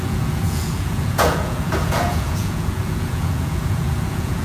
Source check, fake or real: fake